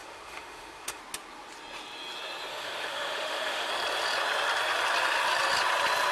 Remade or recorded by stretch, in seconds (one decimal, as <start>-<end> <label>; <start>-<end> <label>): 0.0-1.0 remade; 1.0-2.5 recorded; 2.5-3.7 remade; 3.7-6.1 recorded